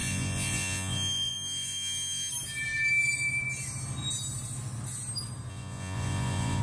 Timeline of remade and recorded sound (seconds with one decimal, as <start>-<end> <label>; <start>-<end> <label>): 0.0-2.3 remade; 2.3-5.5 recorded; 5.5-6.6 remade